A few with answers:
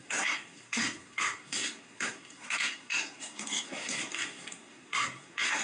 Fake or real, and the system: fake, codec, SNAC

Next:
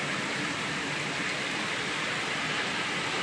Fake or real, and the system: real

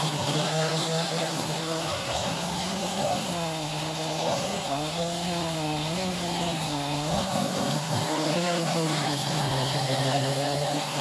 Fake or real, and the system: fake, codec, SNAC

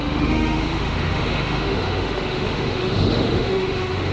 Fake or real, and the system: fake, autoencoder, DAC-VAE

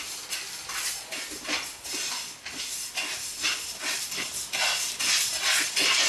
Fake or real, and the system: real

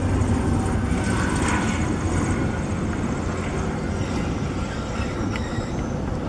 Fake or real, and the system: real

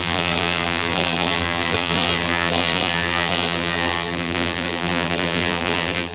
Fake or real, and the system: fake, vocoder, BigVGAN v2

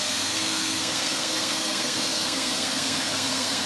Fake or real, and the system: fake, codec, SNAC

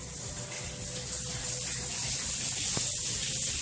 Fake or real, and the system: real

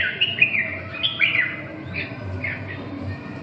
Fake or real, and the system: real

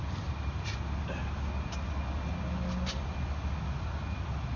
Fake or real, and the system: real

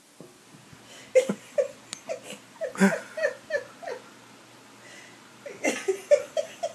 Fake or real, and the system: real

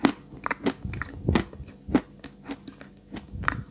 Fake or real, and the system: real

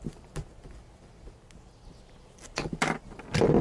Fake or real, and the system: real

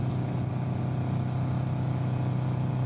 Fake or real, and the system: real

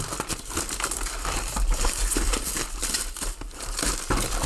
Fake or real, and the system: fake, vocoder, BigVGAN v2